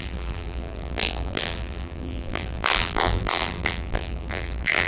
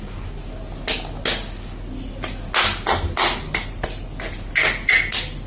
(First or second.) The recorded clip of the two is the second